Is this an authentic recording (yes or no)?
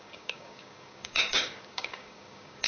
no